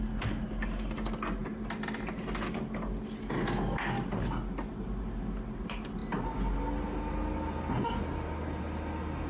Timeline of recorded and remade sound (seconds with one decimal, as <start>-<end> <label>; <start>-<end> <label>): 0.0-9.3 recorded